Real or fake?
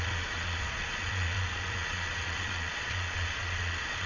fake